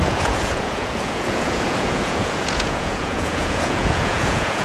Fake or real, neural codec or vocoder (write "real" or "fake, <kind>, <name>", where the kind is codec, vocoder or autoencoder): fake, vocoder, Vocos